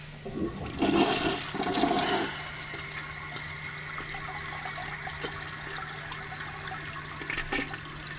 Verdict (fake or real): real